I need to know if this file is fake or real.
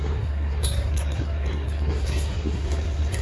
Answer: fake